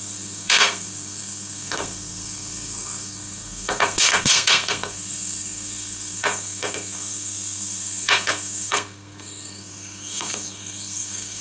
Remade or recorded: remade